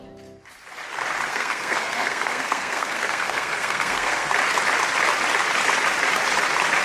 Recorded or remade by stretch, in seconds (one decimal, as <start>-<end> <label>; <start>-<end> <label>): 0.0-1.3 recorded; 1.3-4.3 remade; 4.3-6.8 recorded